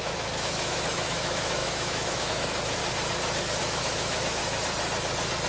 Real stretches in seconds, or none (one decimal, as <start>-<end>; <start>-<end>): 2.8-3.6; 4.4-5.5